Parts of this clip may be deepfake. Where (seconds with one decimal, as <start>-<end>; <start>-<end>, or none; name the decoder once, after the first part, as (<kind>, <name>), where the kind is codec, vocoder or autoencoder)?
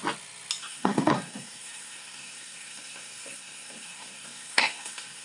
0.6-5.2 (codec, SNAC)